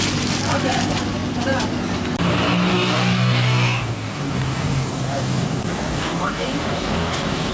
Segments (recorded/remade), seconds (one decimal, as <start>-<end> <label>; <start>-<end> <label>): 0.0-2.7 recorded; 2.7-7.5 remade